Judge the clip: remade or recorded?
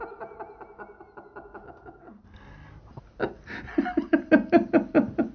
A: recorded